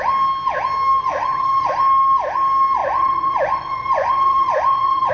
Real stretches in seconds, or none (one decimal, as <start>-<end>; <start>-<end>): 0.0-1.0; 1.7-2.8